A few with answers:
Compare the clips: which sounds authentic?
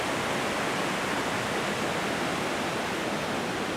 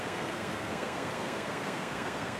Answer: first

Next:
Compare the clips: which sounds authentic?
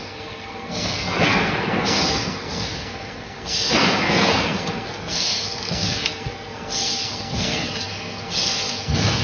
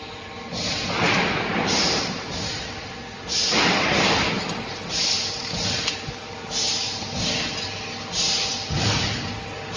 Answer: second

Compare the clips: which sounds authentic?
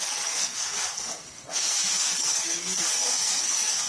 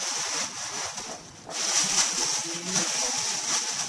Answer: second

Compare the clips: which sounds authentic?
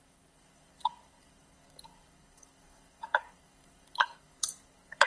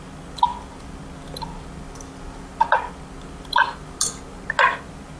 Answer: second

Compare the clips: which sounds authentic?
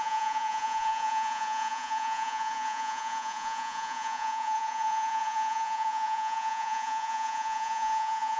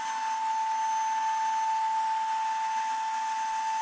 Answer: second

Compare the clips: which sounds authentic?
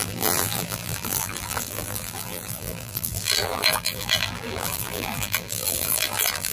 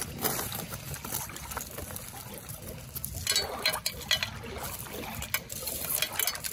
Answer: second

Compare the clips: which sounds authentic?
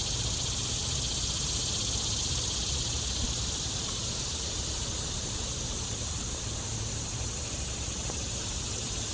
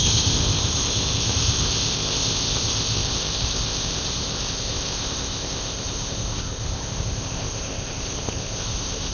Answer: first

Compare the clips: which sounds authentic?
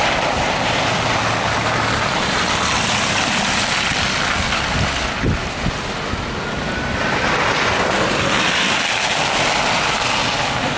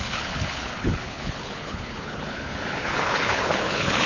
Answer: first